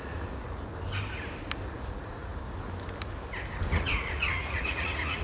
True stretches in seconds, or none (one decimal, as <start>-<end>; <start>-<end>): 0.7-1.7; 2.3-3.7